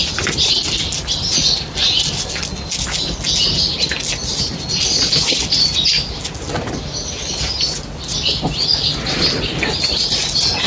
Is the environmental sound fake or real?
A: real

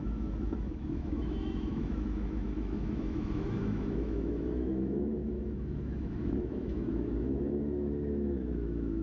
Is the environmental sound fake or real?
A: fake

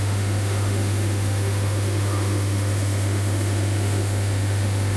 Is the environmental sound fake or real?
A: fake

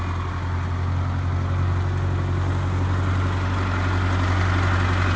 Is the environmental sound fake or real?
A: real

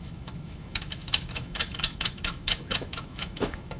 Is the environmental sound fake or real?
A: fake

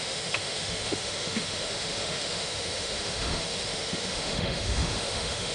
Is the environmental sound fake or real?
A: fake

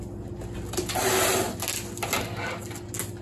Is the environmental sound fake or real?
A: real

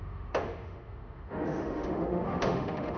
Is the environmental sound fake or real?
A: fake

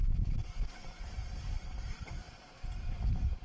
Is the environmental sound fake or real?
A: real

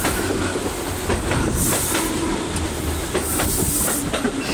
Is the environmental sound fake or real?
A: real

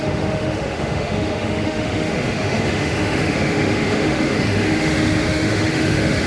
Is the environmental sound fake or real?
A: fake